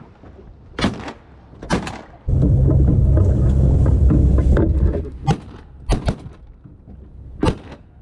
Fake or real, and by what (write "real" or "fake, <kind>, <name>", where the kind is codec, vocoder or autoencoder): real